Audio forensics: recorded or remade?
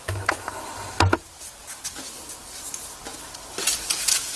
recorded